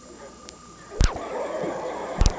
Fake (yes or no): no